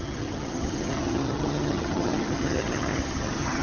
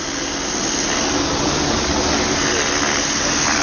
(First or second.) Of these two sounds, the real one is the second